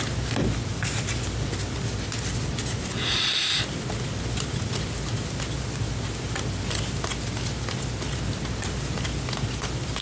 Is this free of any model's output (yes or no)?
yes